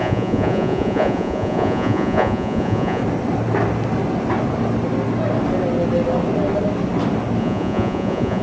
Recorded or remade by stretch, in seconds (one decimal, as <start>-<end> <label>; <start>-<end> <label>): 0.0-3.0 remade; 3.0-7.4 recorded; 7.4-8.4 remade